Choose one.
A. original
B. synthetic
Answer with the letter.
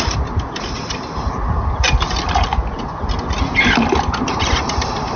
A